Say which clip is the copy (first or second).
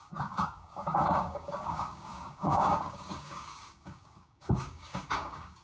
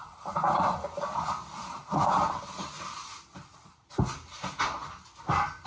first